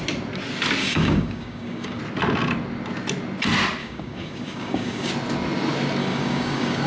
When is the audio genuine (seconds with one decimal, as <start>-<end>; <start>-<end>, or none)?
0.0-0.8; 2.0-3.8; 5.1-6.0